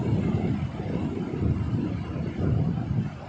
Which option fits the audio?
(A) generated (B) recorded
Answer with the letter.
B